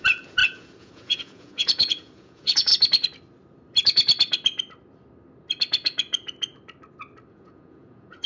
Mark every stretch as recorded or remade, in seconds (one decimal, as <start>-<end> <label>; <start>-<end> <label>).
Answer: 0.0-2.7 remade; 2.7-7.3 recorded; 7.3-8.3 remade

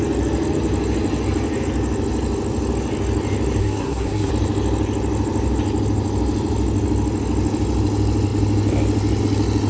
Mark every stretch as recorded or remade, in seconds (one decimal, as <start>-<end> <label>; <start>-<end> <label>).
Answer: 0.0-3.6 recorded; 3.6-4.3 remade; 4.3-9.7 recorded

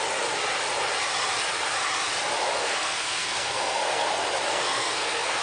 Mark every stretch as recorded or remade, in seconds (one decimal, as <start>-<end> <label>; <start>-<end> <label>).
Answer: 0.0-2.6 recorded; 2.6-4.1 remade; 4.1-4.5 recorded; 4.5-5.4 remade